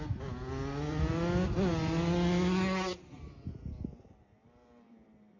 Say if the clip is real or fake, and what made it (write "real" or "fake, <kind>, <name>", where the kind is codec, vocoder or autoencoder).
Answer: real